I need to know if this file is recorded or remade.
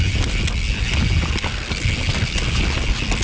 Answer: recorded